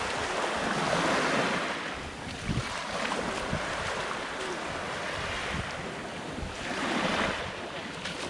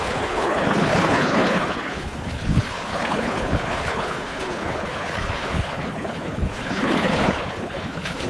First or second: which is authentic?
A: first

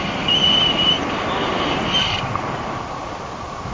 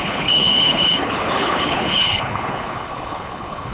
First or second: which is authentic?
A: first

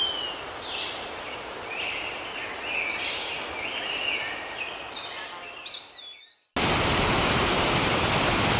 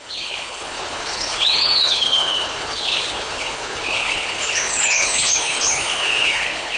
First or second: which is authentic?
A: first